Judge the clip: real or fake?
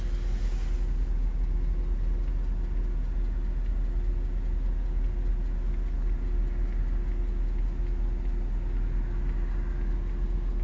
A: real